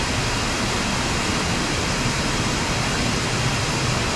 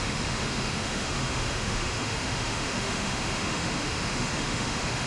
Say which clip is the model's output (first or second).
second